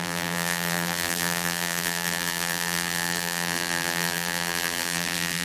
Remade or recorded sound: remade